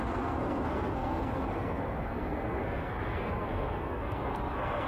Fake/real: fake